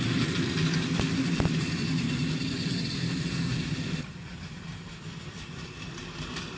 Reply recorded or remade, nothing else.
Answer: recorded